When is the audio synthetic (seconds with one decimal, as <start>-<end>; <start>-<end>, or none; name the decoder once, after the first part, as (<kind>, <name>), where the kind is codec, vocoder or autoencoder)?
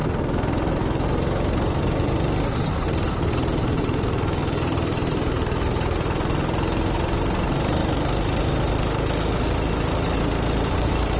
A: 3.8-7.8 (vocoder, BigVGAN v2); 10.7-11.2